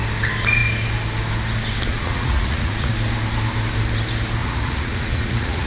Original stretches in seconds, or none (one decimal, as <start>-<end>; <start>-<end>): 0.0-1.9; 2.9-4.4